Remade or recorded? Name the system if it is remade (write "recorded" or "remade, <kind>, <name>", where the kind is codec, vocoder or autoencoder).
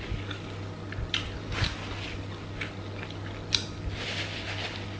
recorded